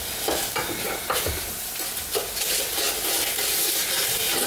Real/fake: real